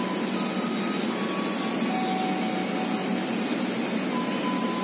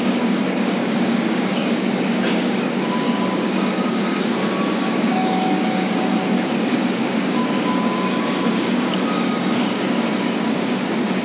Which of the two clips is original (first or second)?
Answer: first